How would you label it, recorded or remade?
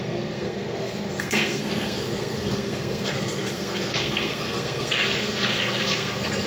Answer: remade